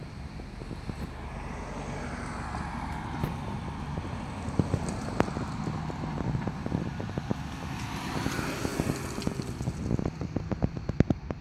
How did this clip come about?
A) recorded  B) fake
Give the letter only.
A